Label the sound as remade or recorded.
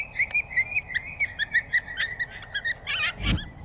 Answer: recorded